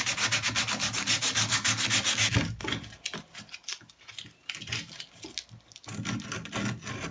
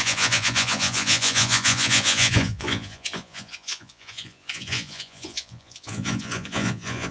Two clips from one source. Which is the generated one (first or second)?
second